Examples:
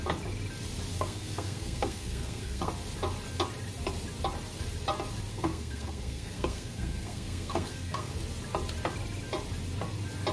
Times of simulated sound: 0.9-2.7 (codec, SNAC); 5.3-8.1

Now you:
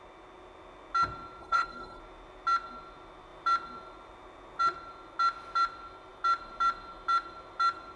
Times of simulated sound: 1.4-2.0 (codec, HILCodec)